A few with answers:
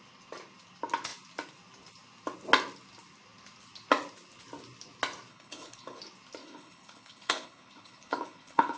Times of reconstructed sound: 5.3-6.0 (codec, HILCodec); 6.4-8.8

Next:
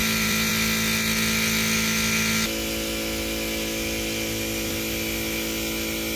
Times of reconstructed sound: 0.0-0.5 (vocoder, BigVGAN v2)

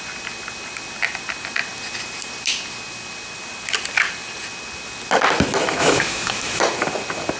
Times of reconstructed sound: 5.8-6.6 (autoencoder, DAC-VAE)